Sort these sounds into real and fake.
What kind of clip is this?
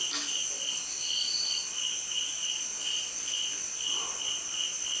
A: fake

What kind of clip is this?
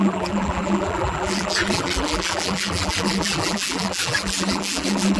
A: fake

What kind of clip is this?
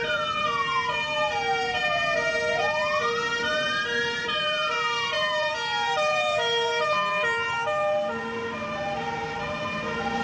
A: fake